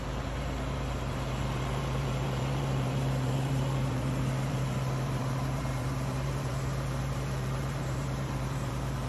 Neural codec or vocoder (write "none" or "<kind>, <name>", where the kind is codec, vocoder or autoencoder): vocoder, BigVGAN v2